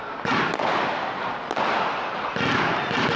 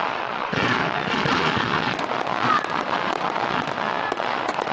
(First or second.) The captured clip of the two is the first